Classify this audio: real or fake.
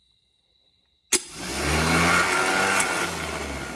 real